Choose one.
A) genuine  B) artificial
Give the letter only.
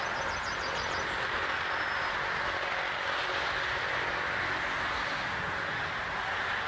A